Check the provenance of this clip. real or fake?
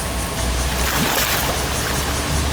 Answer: real